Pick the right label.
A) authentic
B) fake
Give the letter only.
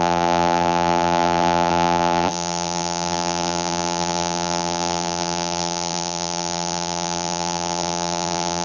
B